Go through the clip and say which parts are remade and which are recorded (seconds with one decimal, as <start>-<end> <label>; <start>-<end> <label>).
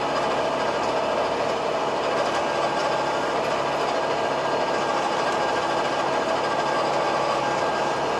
0.0-8.2 recorded